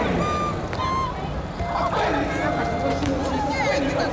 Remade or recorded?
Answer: recorded